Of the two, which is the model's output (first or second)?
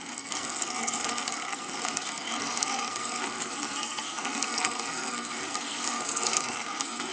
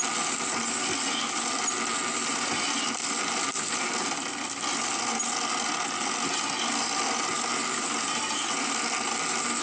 first